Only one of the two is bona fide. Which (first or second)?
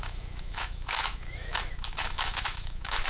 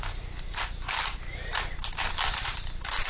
second